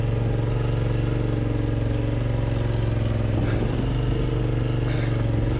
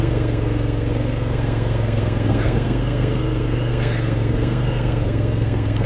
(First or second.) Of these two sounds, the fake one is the second